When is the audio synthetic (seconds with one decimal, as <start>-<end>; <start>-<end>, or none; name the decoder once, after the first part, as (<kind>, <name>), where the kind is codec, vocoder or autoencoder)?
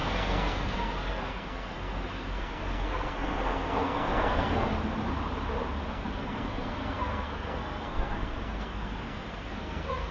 0.0-4.7 (codec, SNAC); 5.9-10.1